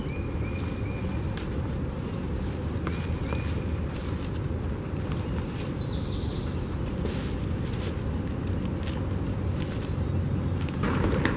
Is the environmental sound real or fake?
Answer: real